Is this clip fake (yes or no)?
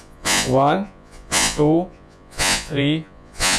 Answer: yes